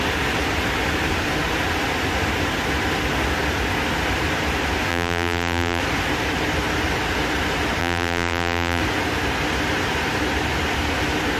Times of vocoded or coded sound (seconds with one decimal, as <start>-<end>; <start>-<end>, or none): 4.9-5.8; 7.8-8.8